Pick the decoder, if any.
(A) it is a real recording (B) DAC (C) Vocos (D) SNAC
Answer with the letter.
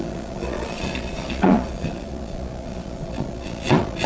C